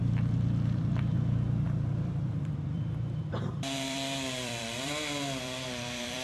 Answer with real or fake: fake